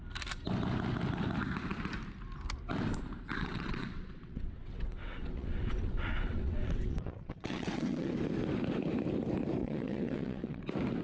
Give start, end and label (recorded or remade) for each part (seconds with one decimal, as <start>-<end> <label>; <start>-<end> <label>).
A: 0.0-3.4 recorded; 3.4-8.1 remade; 8.1-9.6 recorded; 9.6-10.6 remade; 10.6-11.0 recorded